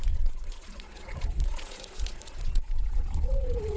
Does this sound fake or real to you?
fake